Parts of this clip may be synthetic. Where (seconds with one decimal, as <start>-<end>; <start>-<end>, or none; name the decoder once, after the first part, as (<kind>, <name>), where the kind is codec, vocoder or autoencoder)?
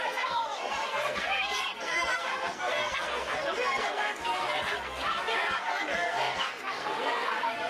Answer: 0.0-7.7 (codec, SNAC)